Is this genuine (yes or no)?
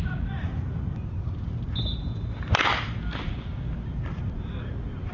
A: yes